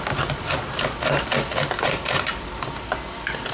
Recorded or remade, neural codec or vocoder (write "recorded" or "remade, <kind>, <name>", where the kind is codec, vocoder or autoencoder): recorded